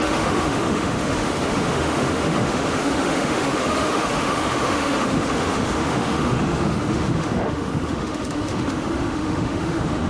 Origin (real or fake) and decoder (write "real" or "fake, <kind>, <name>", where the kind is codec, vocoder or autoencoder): fake, autoencoder, DAC-VAE